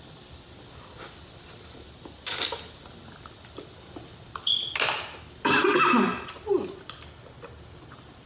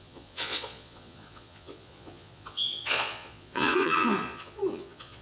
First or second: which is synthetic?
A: second